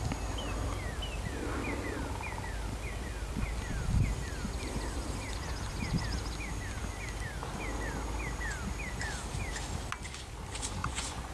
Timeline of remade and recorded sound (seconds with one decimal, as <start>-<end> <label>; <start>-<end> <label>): 0.0-10.8 recorded; 10.8-11.3 remade